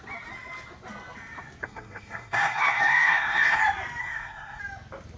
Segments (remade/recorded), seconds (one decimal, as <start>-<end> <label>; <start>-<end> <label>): 0.0-1.6 recorded; 1.6-3.6 remade; 3.6-4.0 recorded; 4.0-4.6 remade; 4.6-5.2 recorded